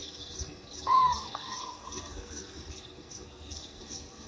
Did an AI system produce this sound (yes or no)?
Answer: yes